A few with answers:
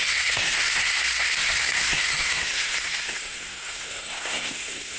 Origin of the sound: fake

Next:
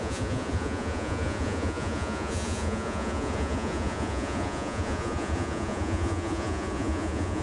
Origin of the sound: fake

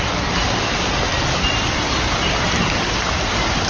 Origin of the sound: real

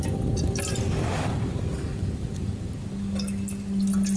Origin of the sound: real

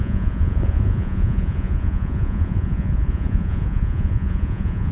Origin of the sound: fake